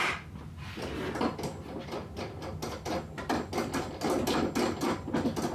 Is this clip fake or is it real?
real